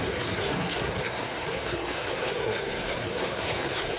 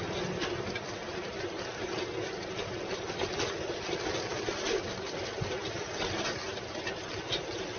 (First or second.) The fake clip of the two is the first